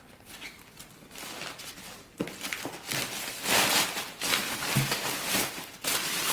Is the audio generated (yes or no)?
no